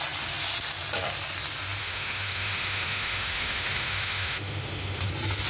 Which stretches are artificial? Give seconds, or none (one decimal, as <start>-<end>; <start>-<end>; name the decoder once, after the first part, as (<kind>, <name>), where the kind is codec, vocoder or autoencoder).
1.8-5.1 (autoencoder, DAC-VAE)